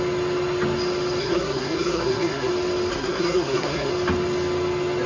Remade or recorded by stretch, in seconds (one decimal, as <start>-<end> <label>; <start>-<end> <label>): 0.0-1.2 recorded; 1.2-2.5 remade; 2.5-2.9 recorded; 2.9-3.9 remade; 3.9-5.1 recorded